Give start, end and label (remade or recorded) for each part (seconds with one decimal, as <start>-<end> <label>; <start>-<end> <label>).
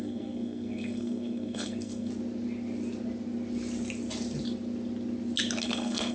0.0-2.1 remade; 2.1-5.6 recorded; 5.6-6.1 remade